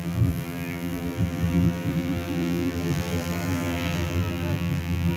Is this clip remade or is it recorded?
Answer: remade